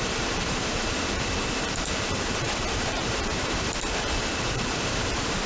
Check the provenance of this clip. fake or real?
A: fake